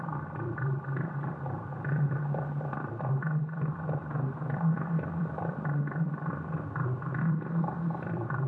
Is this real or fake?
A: fake